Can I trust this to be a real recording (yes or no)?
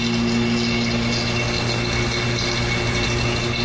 yes